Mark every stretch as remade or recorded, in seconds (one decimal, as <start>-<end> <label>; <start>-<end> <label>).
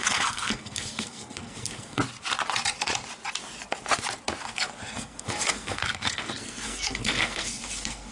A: 0.0-2.0 remade; 2.0-4.4 recorded; 4.4-8.1 remade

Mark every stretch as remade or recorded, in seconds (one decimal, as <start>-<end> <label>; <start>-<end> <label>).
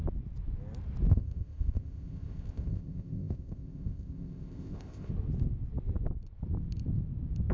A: 0.0-1.1 recorded; 1.1-5.1 remade; 5.1-7.5 recorded